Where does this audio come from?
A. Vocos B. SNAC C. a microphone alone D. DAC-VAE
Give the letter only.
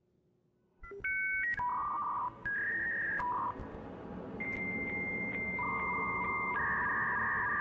C